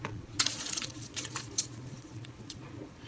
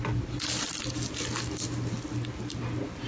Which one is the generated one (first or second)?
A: first